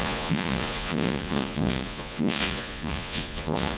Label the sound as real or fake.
fake